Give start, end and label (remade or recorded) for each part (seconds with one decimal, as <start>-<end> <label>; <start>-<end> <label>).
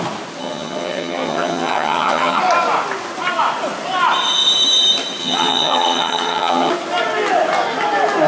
0.0-0.4 recorded; 0.4-2.4 remade; 2.4-5.2 recorded; 5.2-6.7 remade; 6.7-8.3 recorded